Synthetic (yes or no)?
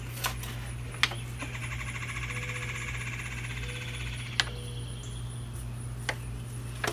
no